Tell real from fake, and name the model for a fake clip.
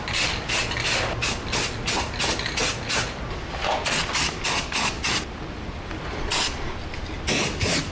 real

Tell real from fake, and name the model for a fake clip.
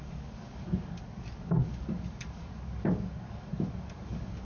fake, codec, DAC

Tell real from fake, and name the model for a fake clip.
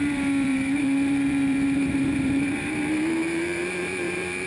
fake, vocoder, BigVGAN v2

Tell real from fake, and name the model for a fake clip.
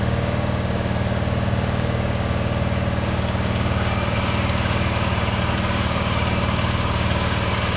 fake, codec, DAC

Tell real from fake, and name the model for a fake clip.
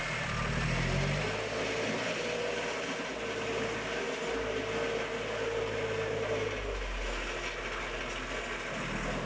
real